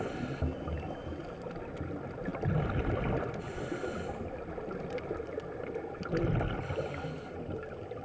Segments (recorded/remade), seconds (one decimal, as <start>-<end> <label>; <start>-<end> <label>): 0.0-8.0 recorded